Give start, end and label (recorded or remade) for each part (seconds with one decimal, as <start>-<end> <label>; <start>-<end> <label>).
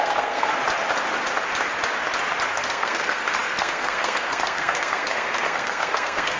0.0-0.5 remade; 0.5-2.5 recorded; 2.5-6.4 remade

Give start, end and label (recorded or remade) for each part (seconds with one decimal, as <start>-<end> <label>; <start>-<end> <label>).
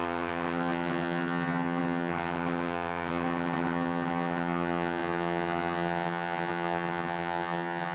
0.0-7.9 remade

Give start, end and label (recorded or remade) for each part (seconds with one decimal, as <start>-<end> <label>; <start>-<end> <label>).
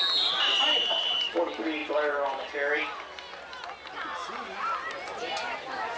0.0-6.0 recorded